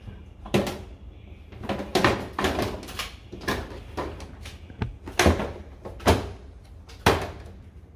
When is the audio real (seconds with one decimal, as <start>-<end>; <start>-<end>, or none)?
0.0-1.9; 4.3-5.6; 6.7-8.0